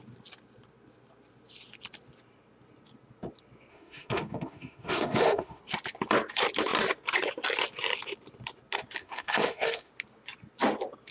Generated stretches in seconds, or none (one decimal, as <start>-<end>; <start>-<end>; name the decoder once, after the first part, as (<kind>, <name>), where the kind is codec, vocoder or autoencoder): 3.7-5.6 (autoencoder, DAC-VAE); 9.0-9.9